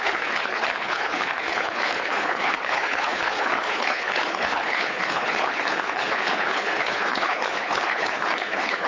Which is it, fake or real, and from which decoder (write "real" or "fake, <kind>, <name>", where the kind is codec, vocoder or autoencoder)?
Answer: fake, codec, HILCodec